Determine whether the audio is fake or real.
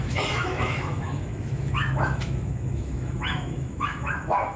fake